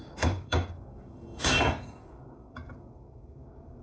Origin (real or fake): fake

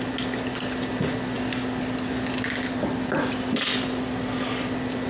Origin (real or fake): real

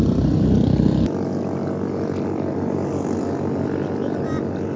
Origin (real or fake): real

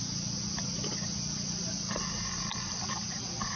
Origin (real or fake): real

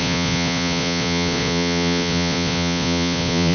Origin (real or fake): fake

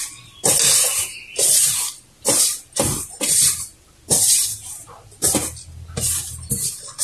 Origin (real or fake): real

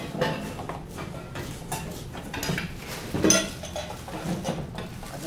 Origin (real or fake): real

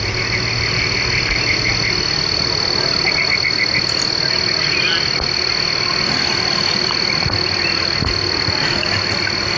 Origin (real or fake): real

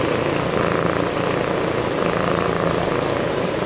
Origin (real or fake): real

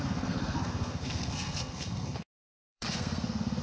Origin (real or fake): fake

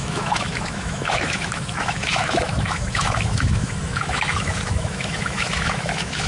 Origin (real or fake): fake